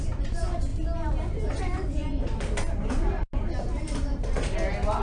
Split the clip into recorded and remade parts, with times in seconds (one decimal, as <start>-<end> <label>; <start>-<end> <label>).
0.0-5.0 recorded